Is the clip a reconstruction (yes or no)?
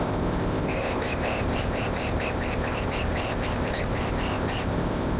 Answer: yes